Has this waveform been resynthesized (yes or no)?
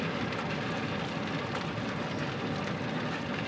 no